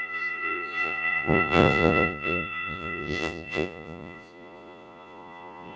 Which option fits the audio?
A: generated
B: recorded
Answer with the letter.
A